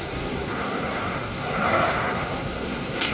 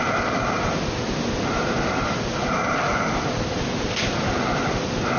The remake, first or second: first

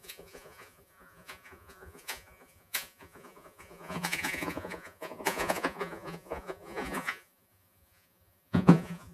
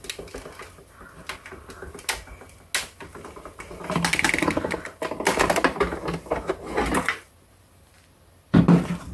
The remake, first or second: first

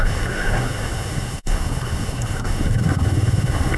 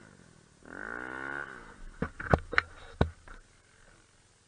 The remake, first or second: first